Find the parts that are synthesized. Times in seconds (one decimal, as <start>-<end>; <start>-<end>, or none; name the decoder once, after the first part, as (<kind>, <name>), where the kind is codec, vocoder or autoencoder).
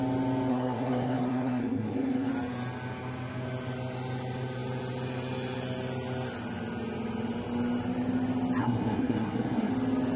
0.5-2.3 (codec, SNAC); 8.6-9.7